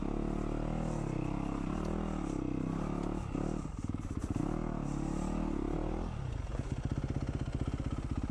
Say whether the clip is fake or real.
real